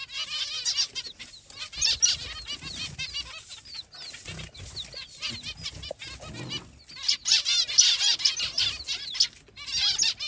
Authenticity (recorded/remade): recorded